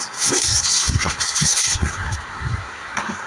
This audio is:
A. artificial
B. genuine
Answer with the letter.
A